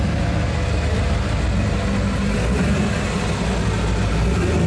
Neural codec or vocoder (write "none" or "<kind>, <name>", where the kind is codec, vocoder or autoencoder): none